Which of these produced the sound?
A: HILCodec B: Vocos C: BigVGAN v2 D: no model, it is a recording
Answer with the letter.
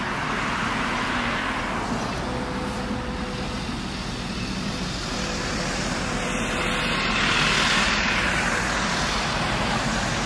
D